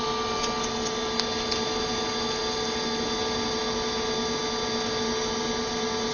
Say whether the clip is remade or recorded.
recorded